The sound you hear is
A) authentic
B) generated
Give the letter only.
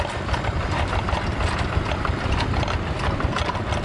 A